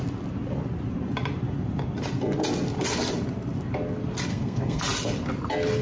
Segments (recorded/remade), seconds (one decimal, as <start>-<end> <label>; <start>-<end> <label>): 0.0-4.3 recorded; 4.3-4.8 remade; 4.8-5.8 recorded